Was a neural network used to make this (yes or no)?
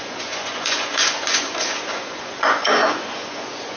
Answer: yes